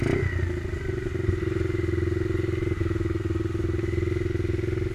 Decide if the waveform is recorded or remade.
recorded